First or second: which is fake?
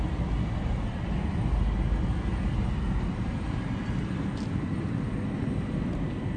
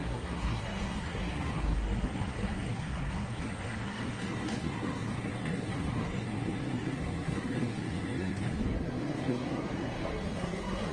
second